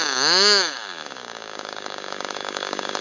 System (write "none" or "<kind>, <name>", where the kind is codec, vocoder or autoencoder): codec, DAC